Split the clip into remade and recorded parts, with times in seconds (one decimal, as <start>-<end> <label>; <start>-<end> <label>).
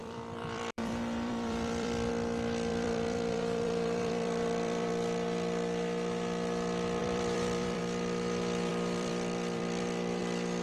0.0-2.1 remade; 2.1-2.7 recorded; 2.7-4.9 remade; 4.9-7.0 recorded; 7.0-7.8 remade; 7.8-8.7 recorded; 8.7-10.2 remade; 10.2-10.6 recorded